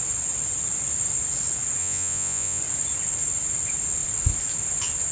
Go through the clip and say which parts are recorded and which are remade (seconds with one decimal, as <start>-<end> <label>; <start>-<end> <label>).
0.0-1.8 recorded; 1.8-2.6 remade; 2.6-5.1 recorded